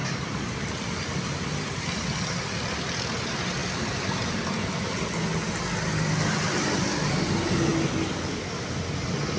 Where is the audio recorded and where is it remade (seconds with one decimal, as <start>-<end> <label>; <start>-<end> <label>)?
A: 0.0-3.6 recorded; 3.6-4.6 remade; 4.6-9.4 recorded